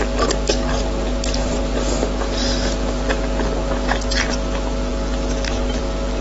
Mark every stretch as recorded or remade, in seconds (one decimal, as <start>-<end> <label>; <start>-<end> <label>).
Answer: 0.0-6.2 recorded